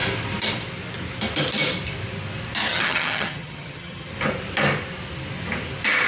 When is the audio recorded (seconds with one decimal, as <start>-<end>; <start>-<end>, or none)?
0.0-2.7; 4.1-6.1